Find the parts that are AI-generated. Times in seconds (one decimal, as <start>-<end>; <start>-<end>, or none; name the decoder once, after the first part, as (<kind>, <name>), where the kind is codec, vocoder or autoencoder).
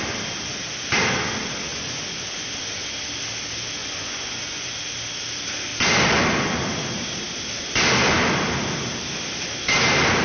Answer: 1.7-2.9 (vocoder, Vocos); 3.8-4.7